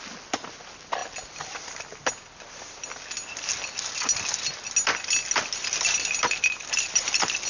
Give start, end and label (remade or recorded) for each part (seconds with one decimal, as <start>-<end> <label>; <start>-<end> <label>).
0.0-7.5 recorded